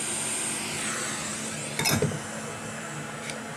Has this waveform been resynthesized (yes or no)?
no